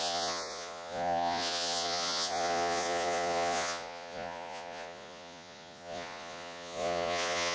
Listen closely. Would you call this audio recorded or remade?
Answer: remade